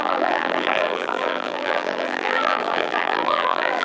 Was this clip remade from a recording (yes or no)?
yes